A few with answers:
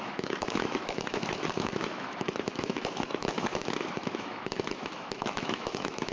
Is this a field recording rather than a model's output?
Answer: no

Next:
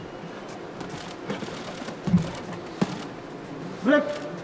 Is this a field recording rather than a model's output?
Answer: yes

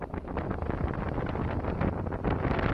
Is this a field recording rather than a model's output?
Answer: yes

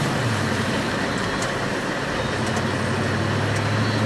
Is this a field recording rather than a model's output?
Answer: yes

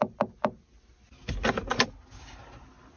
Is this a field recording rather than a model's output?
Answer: yes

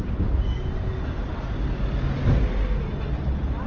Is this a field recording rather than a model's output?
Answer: yes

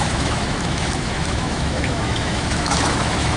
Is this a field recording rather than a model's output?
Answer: no